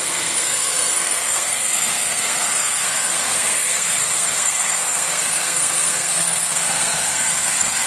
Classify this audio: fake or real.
fake